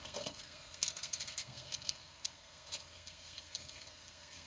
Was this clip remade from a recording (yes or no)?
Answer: yes